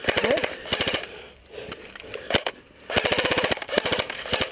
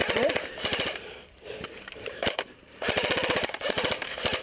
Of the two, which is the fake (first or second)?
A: second